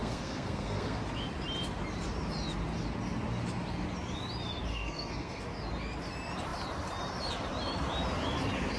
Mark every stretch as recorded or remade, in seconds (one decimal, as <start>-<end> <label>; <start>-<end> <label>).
0.0-1.0 remade; 1.0-4.7 recorded; 4.7-5.4 remade; 5.4-8.8 recorded